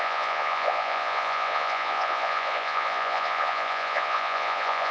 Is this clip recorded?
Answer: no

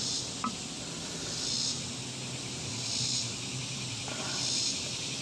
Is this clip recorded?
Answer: yes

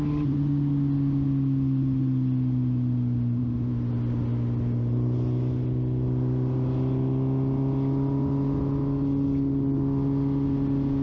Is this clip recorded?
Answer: yes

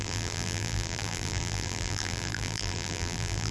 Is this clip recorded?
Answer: no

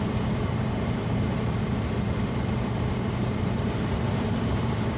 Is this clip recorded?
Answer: no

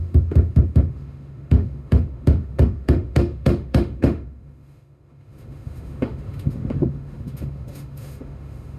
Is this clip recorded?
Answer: no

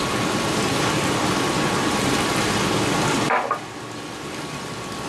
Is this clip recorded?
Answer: no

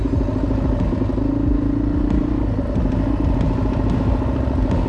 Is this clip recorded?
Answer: yes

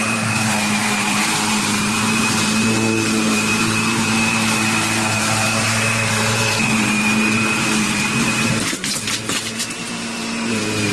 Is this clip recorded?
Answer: no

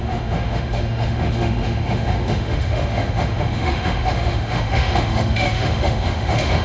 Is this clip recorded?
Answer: no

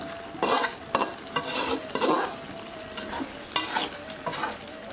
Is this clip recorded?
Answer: yes